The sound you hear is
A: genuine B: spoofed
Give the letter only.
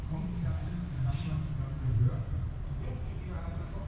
A